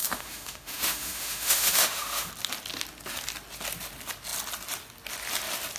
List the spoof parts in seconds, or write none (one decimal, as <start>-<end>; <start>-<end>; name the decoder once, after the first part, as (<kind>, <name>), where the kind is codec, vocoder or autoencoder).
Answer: 0.0-2.3 (autoencoder, DAC-VAE)